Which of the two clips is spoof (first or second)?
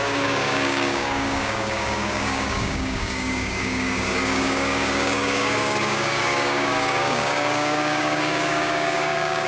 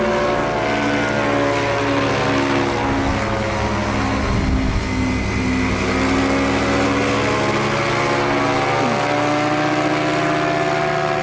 first